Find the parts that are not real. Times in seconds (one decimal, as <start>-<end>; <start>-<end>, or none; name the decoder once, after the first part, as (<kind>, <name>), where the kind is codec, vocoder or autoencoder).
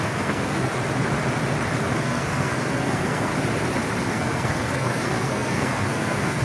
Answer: 0.0-0.7 (codec, SNAC); 2.0-3.3; 4.1-6.4